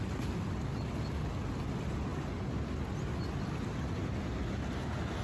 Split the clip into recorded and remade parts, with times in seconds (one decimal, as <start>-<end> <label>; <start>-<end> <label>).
0.0-5.2 recorded